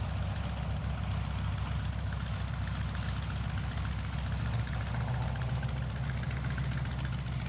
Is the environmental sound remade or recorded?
recorded